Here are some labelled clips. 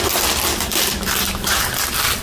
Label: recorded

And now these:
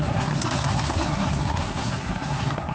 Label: remade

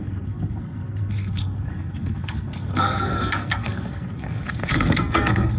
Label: remade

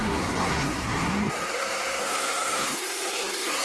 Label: remade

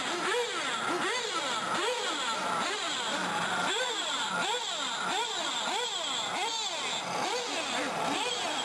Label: recorded